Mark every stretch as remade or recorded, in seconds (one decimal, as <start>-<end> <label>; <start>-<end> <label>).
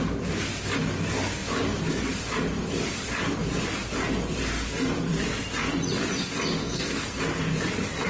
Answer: 0.0-6.6 recorded; 6.6-7.2 remade; 7.2-8.1 recorded